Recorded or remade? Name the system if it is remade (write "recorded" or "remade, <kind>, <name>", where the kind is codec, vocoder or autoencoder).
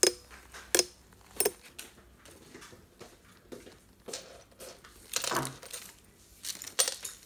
recorded